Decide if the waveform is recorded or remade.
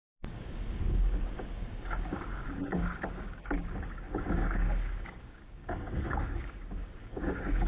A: remade